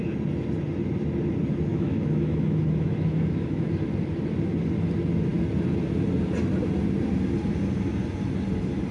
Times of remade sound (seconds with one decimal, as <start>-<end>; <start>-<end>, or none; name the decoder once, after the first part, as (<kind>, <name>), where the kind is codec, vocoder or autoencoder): 1.7-3.7 (autoencoder, DAC-VAE)